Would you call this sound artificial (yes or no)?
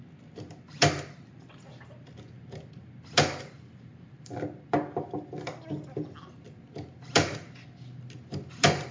no